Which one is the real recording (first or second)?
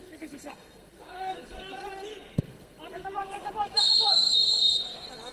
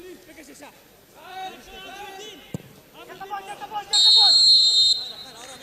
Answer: second